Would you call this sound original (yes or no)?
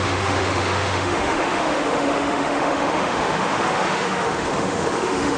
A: no